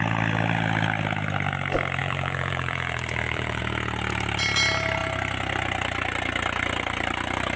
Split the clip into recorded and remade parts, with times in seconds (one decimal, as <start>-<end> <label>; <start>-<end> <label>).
0.0-2.0 recorded; 2.0-3.6 remade; 3.6-7.6 recorded